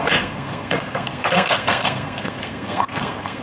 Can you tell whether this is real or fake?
fake